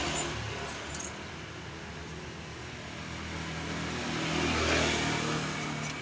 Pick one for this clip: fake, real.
real